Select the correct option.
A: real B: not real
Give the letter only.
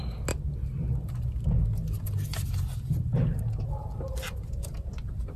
A